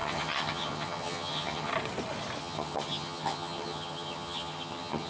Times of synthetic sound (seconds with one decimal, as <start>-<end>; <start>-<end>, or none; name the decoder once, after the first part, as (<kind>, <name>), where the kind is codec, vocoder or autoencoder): 0.0-1.7 (vocoder, HiFi-GAN); 2.4-5.1